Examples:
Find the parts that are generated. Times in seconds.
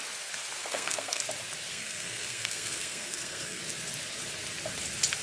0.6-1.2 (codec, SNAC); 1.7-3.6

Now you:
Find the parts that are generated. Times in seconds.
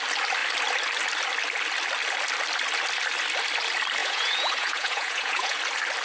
4.0-5.6 (vocoder, Vocos)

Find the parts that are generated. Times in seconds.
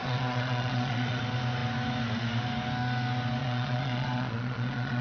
0.0-1.2 (vocoder, Vocos); 3.4-5.0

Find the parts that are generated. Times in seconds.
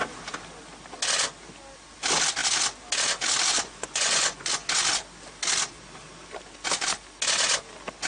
3.5-4.5 (vocoder, Vocos)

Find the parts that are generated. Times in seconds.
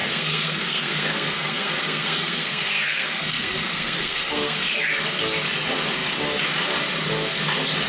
0.0-4.7 (codec, SNAC)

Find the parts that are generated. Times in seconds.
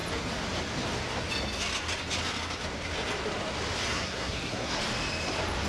3.9-4.8 (codec, SNAC)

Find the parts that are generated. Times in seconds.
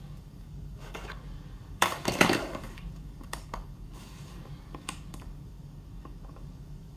0.0-7.0 (codec, DAC)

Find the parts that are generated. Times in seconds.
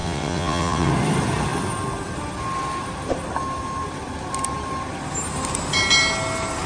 0.0-0.9 (vocoder, WaveNeXt)